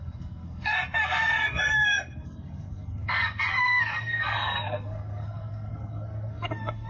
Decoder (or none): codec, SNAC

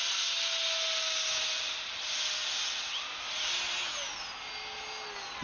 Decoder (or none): none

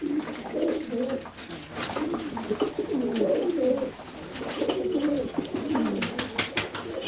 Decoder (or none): none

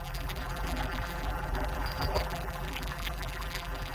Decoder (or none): vocoder, BigVGAN v2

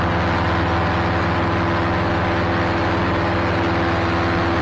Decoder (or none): none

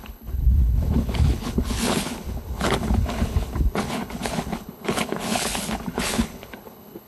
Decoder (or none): codec, HILCodec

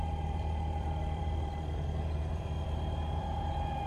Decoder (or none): vocoder, BigVGAN v2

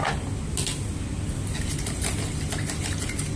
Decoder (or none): none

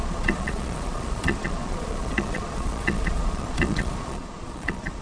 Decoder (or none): vocoder, Vocos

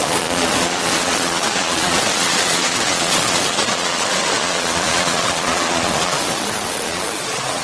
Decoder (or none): vocoder, Vocos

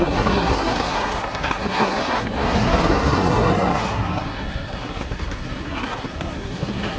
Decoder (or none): codec, SNAC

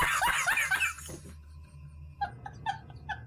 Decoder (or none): none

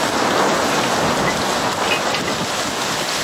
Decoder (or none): none